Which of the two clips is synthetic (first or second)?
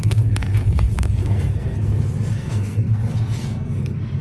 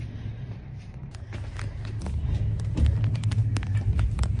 first